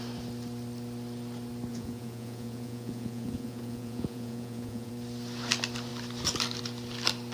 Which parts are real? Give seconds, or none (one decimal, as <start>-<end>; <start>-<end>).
0.0-1.7; 4.9-7.3